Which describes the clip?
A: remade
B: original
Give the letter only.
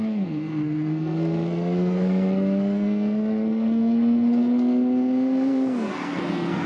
A